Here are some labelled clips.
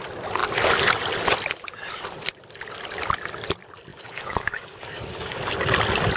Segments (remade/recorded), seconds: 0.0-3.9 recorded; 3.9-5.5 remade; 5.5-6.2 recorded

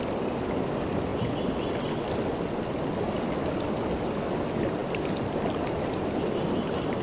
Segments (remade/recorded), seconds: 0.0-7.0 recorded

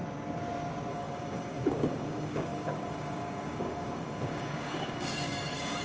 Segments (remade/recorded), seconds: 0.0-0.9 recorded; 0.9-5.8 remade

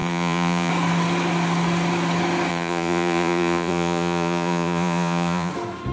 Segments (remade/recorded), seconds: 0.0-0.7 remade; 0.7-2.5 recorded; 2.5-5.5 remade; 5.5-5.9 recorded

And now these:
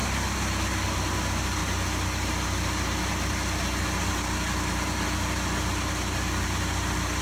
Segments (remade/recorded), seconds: 0.0-7.2 recorded